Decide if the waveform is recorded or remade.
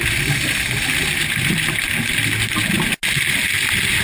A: recorded